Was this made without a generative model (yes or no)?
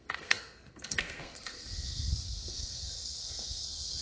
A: no